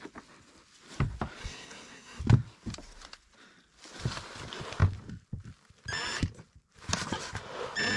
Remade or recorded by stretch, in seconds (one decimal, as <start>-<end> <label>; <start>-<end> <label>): 0.0-1.4 recorded; 1.4-2.2 remade; 2.2-8.0 recorded

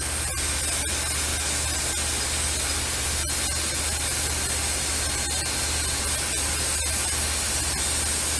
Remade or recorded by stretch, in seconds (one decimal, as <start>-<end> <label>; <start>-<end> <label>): 0.0-8.4 recorded

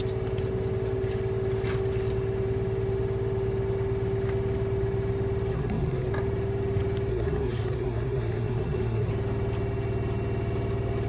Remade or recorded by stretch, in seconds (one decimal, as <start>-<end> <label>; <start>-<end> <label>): 0.0-5.5 recorded; 5.5-6.1 remade; 6.1-7.1 recorded; 7.1-9.1 remade; 9.1-11.1 recorded

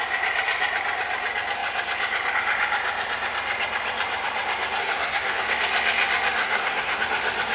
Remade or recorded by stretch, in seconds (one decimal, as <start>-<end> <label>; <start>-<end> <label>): 0.0-4.8 recorded; 4.8-5.4 remade; 5.4-6.4 recorded; 6.4-7.0 remade; 7.0-7.5 recorded

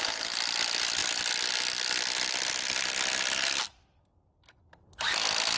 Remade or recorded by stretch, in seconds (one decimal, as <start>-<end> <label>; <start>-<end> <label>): 0.0-5.6 recorded

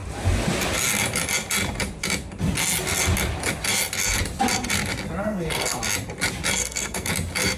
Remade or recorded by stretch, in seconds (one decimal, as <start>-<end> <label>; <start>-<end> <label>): 0.0-5.2 recorded; 5.2-5.8 remade; 5.8-6.6 recorded; 6.6-7.1 remade; 7.1-7.6 recorded